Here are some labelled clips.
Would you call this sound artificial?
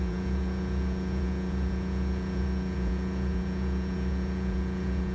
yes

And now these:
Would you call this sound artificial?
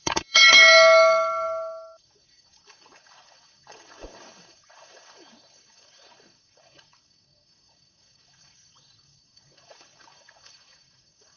yes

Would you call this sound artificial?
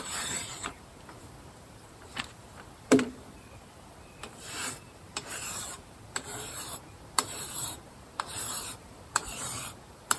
yes